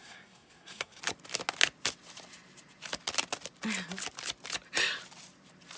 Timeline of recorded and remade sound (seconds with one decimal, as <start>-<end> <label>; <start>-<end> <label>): 0.0-1.0 remade; 1.0-5.8 recorded

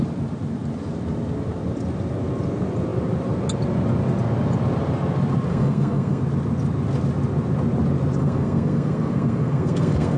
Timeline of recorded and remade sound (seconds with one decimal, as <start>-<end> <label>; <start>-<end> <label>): 0.0-5.5 recorded; 5.5-6.2 remade; 6.2-8.2 recorded; 8.2-10.2 remade

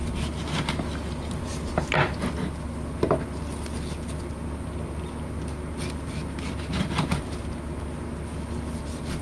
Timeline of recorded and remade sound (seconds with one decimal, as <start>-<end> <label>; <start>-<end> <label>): 0.0-9.2 recorded

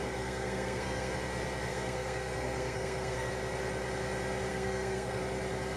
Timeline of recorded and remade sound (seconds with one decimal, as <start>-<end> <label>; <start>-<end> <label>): 0.0-1.1 remade; 1.1-1.7 recorded; 1.7-3.3 remade; 3.3-4.5 recorded; 4.5-5.2 remade; 5.2-5.8 recorded

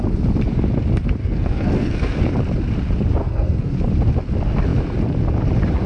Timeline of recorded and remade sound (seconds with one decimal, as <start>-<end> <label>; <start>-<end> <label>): 0.0-1.2 recorded; 1.2-2.2 remade; 2.2-3.2 recorded; 3.2-3.7 remade; 3.7-5.9 recorded

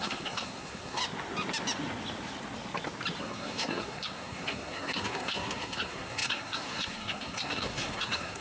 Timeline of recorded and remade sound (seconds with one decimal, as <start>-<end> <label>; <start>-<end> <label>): 0.0-1.0 remade; 1.0-3.2 recorded; 3.2-8.4 remade

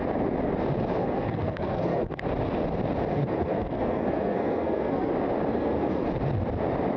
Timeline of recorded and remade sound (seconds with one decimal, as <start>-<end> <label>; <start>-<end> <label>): 0.0-1.0 recorded; 1.0-2.2 remade; 2.2-3.1 recorded; 3.1-5.1 remade; 5.1-5.5 recorded; 5.5-6.1 remade; 6.1-7.0 recorded